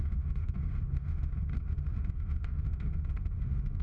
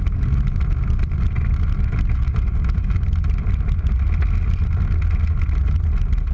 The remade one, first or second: first